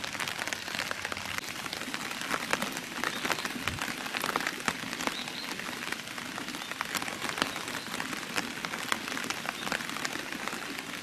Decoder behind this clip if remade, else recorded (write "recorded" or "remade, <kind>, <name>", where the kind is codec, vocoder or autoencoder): recorded